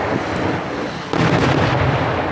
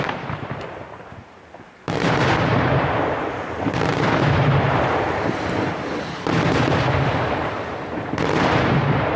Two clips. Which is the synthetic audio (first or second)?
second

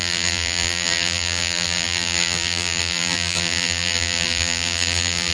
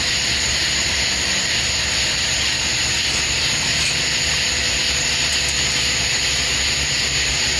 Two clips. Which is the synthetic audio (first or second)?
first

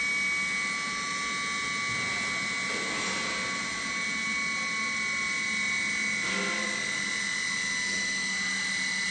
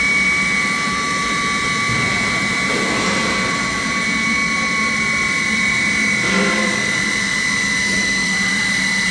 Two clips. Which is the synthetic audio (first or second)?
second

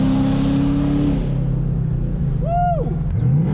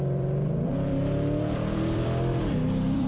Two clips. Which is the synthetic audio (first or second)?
second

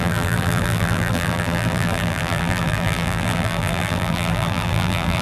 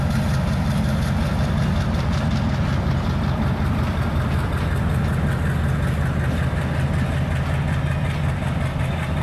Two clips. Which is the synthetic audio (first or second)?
first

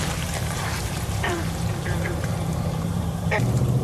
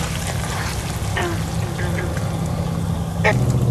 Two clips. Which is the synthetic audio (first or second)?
first